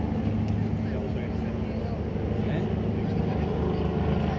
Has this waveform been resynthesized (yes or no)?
no